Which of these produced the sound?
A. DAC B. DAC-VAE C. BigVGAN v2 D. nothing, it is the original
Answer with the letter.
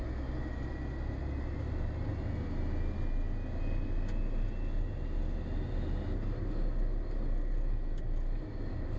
D